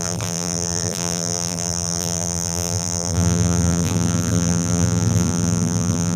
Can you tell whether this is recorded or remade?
remade